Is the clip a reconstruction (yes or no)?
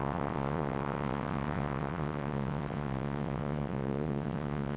yes